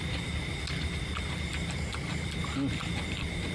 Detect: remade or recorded recorded